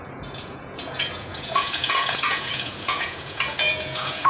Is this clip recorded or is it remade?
remade